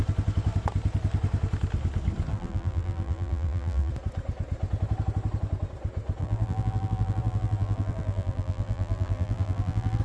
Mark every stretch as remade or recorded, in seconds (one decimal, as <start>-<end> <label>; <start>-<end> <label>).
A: 0.0-2.3 recorded; 2.3-3.9 remade; 3.9-6.2 recorded; 6.2-10.0 remade